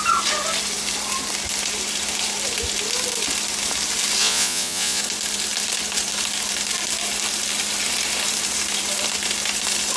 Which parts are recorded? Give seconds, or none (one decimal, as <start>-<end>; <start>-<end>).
0.0-4.2; 5.0-10.0